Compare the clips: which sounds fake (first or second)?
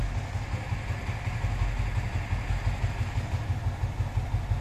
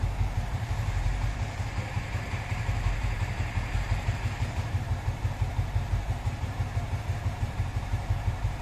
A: second